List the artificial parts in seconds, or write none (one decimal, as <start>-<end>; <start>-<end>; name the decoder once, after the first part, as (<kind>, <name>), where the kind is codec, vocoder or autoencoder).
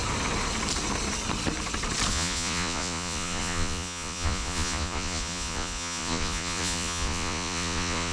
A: 2.1-8.1 (vocoder, Vocos)